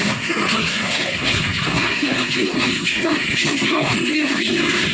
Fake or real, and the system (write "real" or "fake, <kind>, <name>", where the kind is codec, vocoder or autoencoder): fake, codec, SNAC